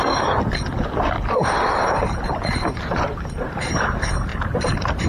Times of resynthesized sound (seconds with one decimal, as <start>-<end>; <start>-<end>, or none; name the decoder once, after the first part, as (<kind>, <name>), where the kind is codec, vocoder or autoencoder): 1.8-3.7 (vocoder, BigVGAN v2); 4.3-5.1